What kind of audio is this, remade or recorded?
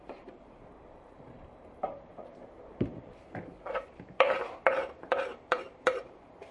remade